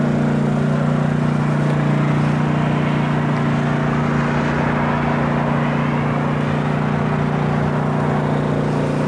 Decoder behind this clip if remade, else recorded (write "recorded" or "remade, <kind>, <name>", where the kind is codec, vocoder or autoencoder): recorded